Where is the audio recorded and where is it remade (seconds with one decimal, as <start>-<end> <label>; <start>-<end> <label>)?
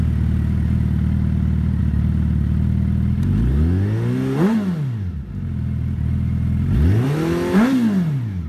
0.0-8.5 recorded